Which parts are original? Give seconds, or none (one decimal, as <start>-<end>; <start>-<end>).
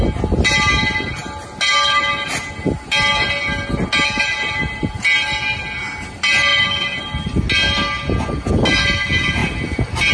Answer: 0.0-10.1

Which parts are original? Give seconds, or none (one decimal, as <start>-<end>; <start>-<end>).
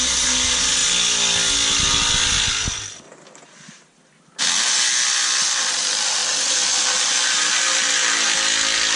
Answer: 0.0-9.0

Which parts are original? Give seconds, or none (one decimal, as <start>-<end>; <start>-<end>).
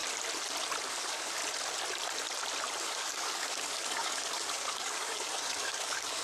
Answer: 0.0-0.9; 1.4-2.8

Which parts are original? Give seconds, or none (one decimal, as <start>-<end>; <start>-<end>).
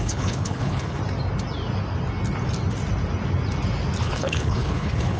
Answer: 1.0-4.0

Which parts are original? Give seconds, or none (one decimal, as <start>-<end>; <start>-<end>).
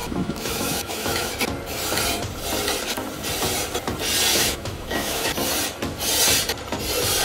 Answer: 1.3-4.3; 5.3-7.2